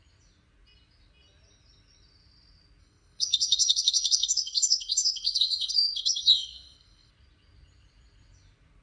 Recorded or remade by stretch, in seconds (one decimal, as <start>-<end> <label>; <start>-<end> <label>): 0.0-2.8 recorded; 2.8-7.1 remade; 7.1-8.8 recorded